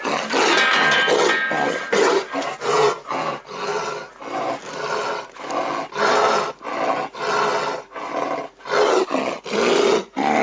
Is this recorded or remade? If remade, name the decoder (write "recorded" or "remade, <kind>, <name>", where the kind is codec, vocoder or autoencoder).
recorded